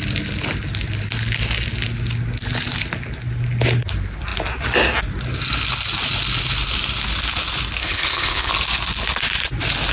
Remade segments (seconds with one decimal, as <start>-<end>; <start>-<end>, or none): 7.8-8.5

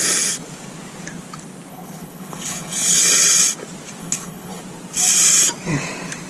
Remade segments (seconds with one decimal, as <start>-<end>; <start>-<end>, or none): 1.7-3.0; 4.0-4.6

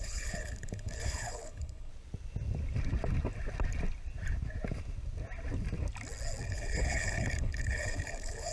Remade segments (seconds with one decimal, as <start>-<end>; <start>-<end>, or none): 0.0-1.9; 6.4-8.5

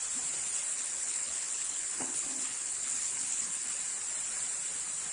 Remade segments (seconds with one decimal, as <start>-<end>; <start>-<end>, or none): 0.7-3.8